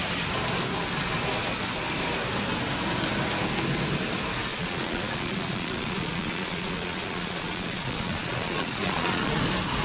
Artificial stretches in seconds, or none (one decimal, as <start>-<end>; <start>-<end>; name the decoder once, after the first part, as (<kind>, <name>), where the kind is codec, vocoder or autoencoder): 4.5-9.4 (vocoder, Vocos)